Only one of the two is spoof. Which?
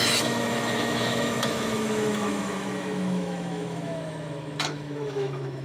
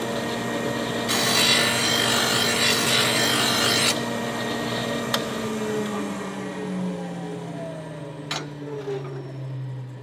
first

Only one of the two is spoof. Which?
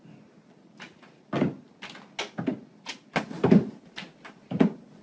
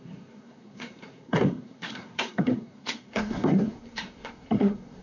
second